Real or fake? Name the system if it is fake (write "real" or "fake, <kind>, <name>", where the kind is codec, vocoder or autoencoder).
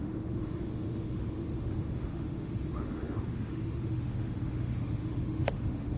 fake, autoencoder, DAC-VAE